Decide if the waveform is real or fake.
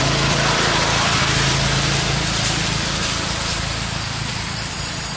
fake